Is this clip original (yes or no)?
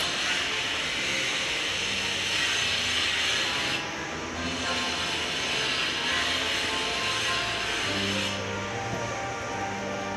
yes